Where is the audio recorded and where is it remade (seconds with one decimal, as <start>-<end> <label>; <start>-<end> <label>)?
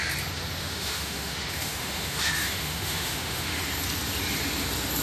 0.0-0.6 recorded; 0.6-3.6 remade; 3.6-5.0 recorded